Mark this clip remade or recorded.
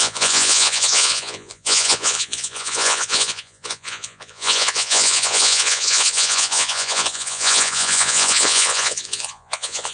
remade